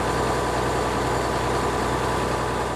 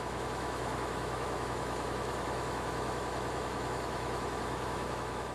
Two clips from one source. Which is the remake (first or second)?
second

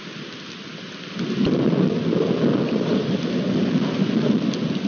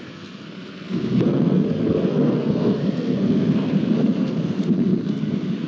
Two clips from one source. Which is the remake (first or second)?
second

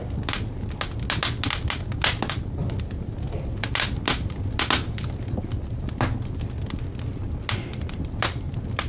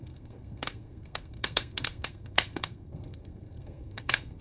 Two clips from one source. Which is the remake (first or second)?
second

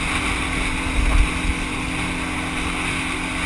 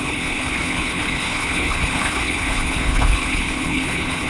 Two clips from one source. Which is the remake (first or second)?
second